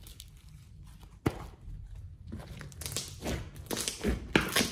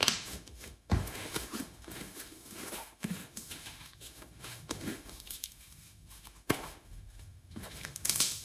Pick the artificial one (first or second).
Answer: second